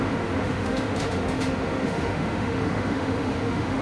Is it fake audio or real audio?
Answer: fake